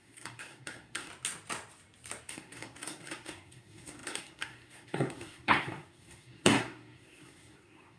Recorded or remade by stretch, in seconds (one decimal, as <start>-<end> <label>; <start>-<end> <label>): 0.0-1.1 remade; 1.1-2.3 recorded; 2.3-8.0 remade